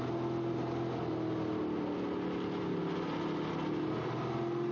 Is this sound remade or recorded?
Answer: recorded